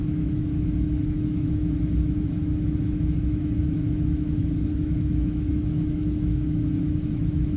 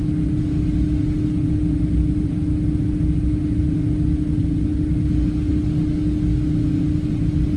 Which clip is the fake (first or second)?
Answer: first